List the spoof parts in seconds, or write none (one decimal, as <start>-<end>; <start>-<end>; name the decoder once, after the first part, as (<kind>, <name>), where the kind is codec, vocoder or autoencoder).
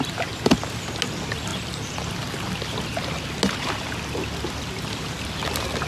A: none